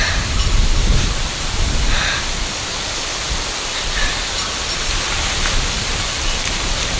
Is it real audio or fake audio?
fake